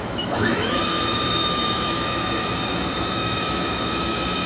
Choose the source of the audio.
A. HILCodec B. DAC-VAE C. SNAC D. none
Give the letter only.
B